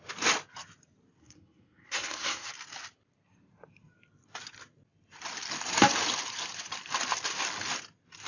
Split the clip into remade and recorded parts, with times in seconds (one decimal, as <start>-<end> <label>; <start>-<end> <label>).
0.0-1.2 recorded; 1.2-2.5 remade; 2.5-8.3 recorded